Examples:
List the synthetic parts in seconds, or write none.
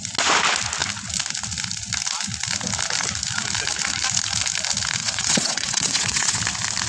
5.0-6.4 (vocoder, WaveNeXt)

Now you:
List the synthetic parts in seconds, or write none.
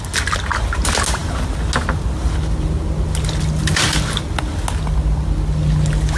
none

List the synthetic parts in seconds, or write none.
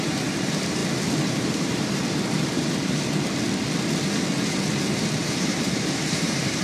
0.0-0.8 (vocoder, BigVGAN v2); 1.3-2.8; 5.2-6.6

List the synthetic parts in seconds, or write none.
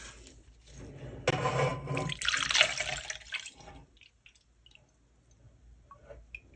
none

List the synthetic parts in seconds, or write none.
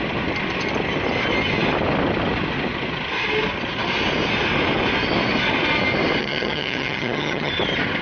6.2-7.5 (vocoder, HiFi-GAN)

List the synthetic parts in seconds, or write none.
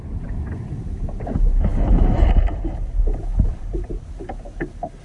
3.3-3.9 (vocoder, BigVGAN v2)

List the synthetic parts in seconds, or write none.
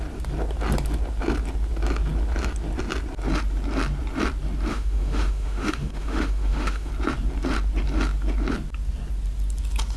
4.7-6.9 (autoencoder, DAC-VAE)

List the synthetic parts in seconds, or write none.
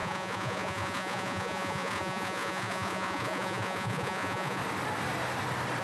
0.0-4.6 (vocoder, Vocos)